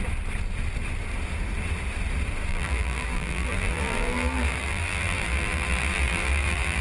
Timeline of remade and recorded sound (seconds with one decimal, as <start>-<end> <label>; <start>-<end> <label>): 0.0-2.5 recorded; 2.5-6.8 remade